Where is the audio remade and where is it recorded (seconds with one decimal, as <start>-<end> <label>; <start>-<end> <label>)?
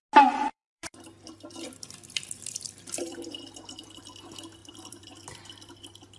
0.0-0.5 recorded; 0.5-4.0 remade; 4.0-4.6 recorded; 4.6-5.4 remade; 5.4-6.2 recorded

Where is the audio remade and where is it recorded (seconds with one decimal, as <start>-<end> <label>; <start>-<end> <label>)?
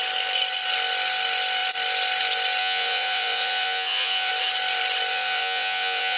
0.0-2.6 recorded; 2.6-4.3 remade; 4.3-5.1 recorded; 5.1-6.2 remade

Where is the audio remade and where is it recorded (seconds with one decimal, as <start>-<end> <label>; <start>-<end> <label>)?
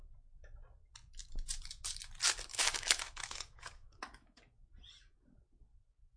0.0-2.5 recorded; 2.5-4.4 remade; 4.4-6.2 recorded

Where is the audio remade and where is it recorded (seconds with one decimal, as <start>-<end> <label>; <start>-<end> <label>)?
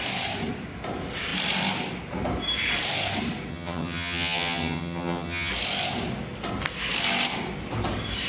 0.0-3.5 recorded; 3.5-5.5 remade; 5.5-8.3 recorded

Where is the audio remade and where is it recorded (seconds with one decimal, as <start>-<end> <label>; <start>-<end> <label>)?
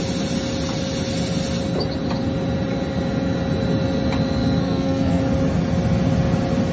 0.0-4.6 recorded; 4.6-5.2 remade; 5.2-6.7 recorded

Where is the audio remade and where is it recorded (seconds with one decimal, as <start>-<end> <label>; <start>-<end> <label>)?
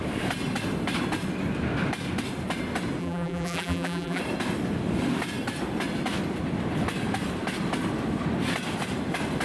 0.0-3.0 recorded; 3.0-4.2 remade; 4.2-9.4 recorded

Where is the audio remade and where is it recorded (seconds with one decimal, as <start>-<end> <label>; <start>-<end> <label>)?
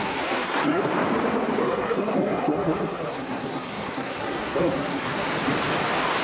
0.0-0.8 remade; 0.8-1.6 recorded; 1.6-5.3 remade; 5.3-6.2 recorded